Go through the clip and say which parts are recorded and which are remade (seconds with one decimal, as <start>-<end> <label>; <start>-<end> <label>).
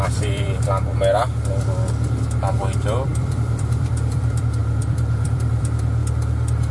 0.0-0.9 remade; 0.9-2.5 recorded; 2.5-6.0 remade; 6.0-6.7 recorded